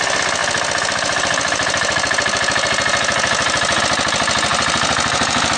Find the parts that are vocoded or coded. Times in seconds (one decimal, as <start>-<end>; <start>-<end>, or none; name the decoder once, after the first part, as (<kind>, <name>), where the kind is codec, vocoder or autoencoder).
0.4-3.8 (vocoder, BigVGAN v2); 4.5-5.6